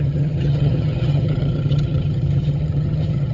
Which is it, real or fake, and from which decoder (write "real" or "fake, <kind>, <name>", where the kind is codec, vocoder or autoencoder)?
fake, vocoder, HiFi-GAN